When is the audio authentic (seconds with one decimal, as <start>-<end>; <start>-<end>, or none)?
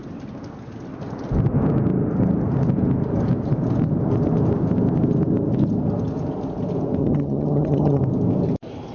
0.0-7.0; 8.0-8.9